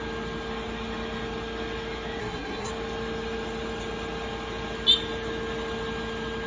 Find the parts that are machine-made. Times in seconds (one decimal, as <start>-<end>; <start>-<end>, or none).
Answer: 2.2-2.7